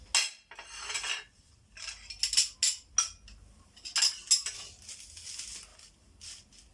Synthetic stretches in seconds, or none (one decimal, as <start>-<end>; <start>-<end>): none